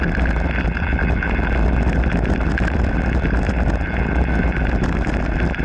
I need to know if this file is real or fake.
real